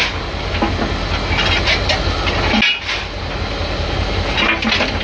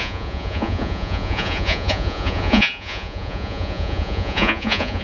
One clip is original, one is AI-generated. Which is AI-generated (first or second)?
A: second